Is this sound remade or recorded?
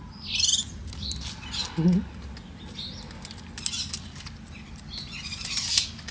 recorded